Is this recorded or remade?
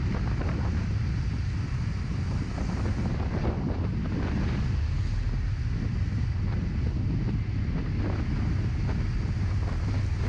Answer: recorded